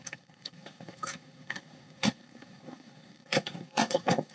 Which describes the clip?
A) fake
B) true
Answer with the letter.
A